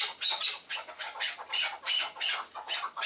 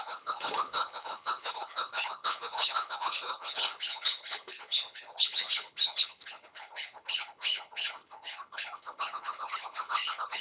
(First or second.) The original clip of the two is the first